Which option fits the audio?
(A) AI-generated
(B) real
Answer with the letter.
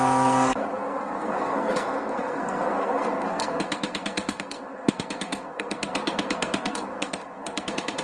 A